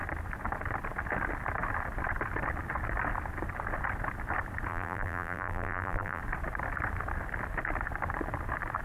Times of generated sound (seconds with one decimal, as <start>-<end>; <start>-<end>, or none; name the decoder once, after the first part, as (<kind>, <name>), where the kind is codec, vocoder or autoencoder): 4.7-6.2 (vocoder, BigVGAN v2)